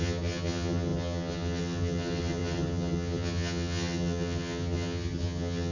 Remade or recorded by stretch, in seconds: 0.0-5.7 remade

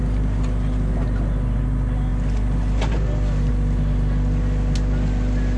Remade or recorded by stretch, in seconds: 0.0-5.6 recorded

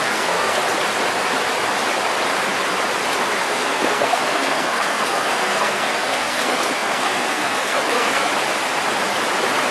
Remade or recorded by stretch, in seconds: 0.0-0.6 remade; 0.6-3.4 recorded; 3.4-8.3 remade; 8.3-9.7 recorded

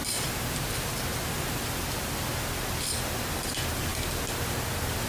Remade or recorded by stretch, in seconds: 0.0-5.1 recorded

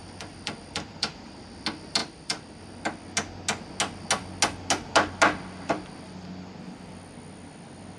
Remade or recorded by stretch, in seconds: 0.0-1.4 remade; 1.4-2.0 recorded; 2.0-2.6 remade; 2.6-8.0 recorded

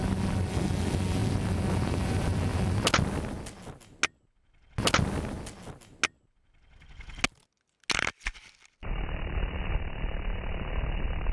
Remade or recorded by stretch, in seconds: 0.0-11.3 recorded